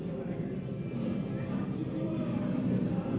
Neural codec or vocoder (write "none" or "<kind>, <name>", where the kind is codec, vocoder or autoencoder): vocoder, BigVGAN v2